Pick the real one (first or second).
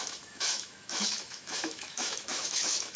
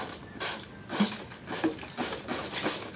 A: second